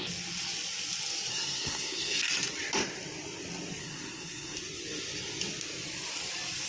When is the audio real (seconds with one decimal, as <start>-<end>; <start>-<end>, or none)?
0.0-1.3; 2.2-3.8; 4.6-6.7